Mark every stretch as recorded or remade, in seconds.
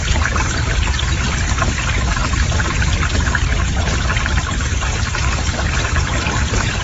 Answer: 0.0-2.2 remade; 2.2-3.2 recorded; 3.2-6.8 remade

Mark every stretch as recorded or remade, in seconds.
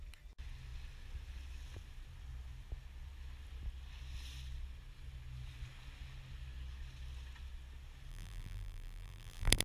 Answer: 0.0-8.1 recorded; 8.1-9.6 remade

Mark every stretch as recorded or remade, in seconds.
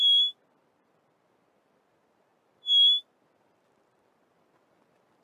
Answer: 0.0-5.2 recorded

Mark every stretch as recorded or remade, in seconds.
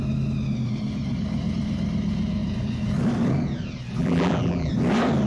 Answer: 0.0-4.0 recorded; 4.0-4.7 remade; 4.7-5.3 recorded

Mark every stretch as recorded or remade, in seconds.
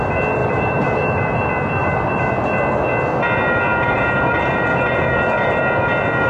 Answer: 0.0-0.4 recorded; 0.4-1.4 remade; 1.4-1.8 recorded; 1.8-2.3 remade; 2.3-3.7 recorded; 3.7-5.6 remade; 5.6-6.3 recorded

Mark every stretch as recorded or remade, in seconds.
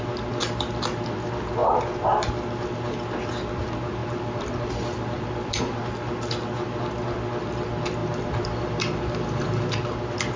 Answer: 0.0-4.0 recorded; 4.0-5.9 remade; 5.9-8.0 recorded; 8.0-10.4 remade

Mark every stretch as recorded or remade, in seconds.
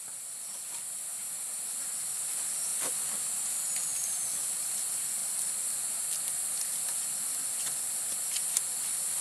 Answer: 0.0-1.1 remade; 1.1-1.8 recorded; 1.8-2.7 remade; 2.7-3.8 recorded; 3.8-5.2 remade; 5.2-9.2 recorded